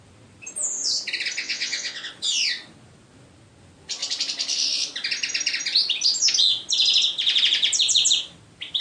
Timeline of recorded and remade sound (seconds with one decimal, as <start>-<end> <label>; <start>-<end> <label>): 0.0-1.4 recorded; 1.4-2.1 remade; 2.1-8.8 recorded